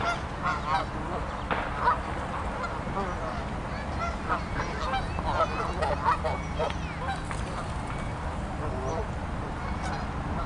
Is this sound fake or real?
real